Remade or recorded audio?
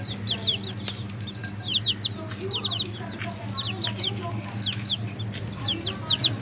recorded